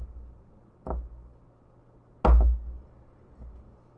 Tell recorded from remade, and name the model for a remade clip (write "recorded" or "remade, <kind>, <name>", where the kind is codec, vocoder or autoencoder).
recorded